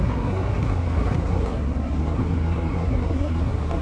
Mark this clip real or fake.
fake